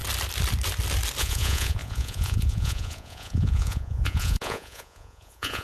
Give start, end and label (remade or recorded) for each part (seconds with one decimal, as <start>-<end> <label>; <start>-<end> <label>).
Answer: 0.0-1.2 recorded; 1.2-5.6 remade